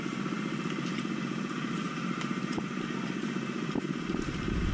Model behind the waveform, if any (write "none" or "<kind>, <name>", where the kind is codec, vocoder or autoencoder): none